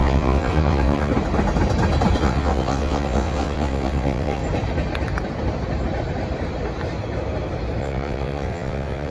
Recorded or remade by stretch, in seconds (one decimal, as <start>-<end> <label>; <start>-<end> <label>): 0.0-1.1 remade; 1.1-2.2 recorded; 2.2-4.4 remade; 4.4-7.8 recorded; 7.8-9.1 remade